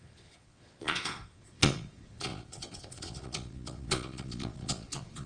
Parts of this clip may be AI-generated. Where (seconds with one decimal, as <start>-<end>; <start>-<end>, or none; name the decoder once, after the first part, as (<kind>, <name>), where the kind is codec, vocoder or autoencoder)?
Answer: 0.0-5.3 (vocoder, Vocos)